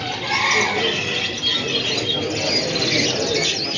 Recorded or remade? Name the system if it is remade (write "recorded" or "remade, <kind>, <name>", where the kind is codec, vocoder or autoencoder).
recorded